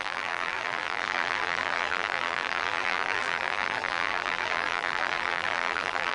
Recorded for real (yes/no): no